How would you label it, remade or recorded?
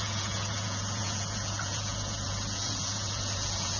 remade